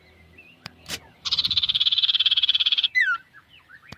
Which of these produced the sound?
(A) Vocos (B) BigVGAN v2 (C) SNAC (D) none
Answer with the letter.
B